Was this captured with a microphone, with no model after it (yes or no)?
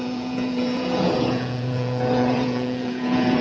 no